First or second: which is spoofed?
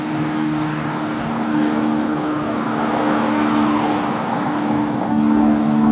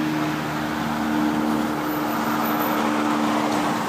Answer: first